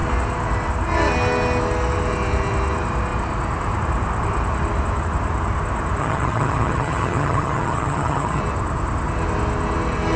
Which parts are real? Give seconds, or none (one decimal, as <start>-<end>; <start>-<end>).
0.0-6.0; 8.4-10.2